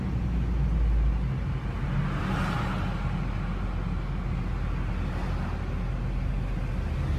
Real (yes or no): yes